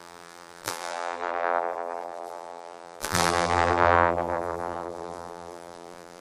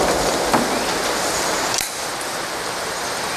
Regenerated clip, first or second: first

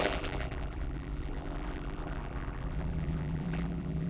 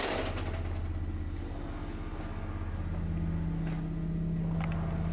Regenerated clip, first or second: first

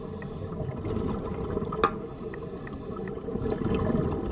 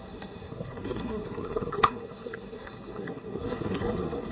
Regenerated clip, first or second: second